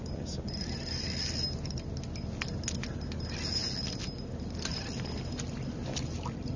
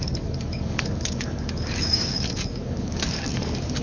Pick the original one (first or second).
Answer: first